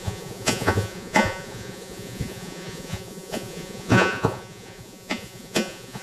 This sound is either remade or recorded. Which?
remade